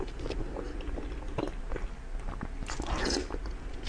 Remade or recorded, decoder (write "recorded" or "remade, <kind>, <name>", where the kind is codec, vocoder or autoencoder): recorded